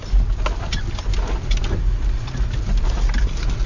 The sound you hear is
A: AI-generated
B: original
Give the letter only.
B